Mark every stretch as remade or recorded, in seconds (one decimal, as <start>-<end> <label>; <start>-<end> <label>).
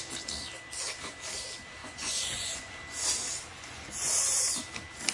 0.0-1.8 recorded; 1.8-2.7 remade; 2.7-3.5 recorded; 3.5-4.5 remade; 4.5-5.1 recorded